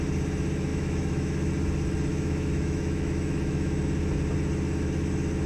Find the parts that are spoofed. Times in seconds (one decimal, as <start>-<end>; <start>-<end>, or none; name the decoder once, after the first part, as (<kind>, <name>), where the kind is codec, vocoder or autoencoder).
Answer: 0.7-1.5 (autoencoder, DAC-VAE); 2.1-3.8